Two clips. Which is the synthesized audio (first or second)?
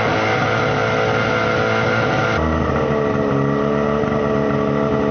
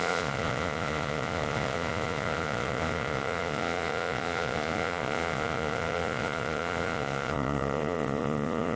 second